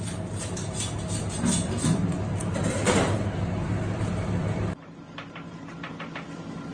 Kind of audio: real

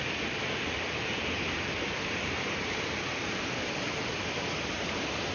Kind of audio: real